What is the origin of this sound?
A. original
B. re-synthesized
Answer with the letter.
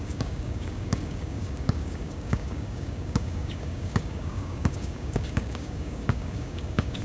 B